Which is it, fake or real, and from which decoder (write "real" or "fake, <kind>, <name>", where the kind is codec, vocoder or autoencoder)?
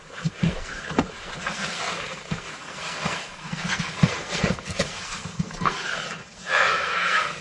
fake, codec, SNAC